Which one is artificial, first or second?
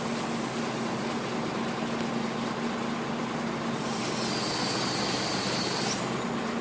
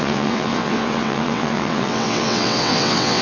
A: second